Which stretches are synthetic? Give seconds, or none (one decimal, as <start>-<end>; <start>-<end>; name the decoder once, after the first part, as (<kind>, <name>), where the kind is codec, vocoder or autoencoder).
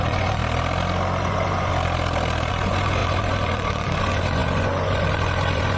0.0-0.4 (vocoder, Vocos); 1.2-1.7; 2.5-5.8